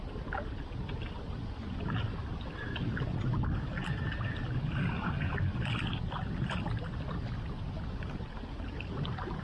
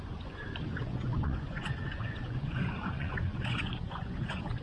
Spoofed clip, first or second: second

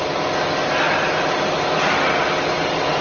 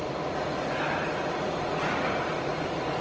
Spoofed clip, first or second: second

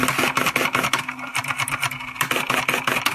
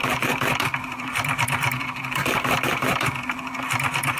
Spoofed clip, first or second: second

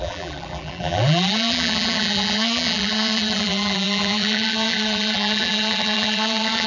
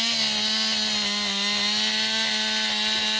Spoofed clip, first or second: first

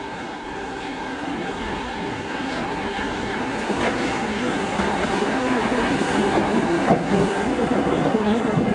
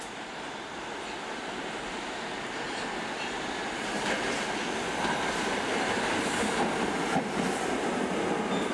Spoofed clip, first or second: first